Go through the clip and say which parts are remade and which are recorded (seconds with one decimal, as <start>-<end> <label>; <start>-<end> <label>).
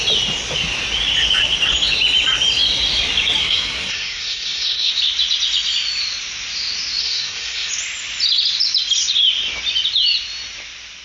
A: 0.0-3.4 recorded; 3.4-4.9 remade; 4.9-7.0 recorded; 7.0-7.7 remade; 7.7-11.0 recorded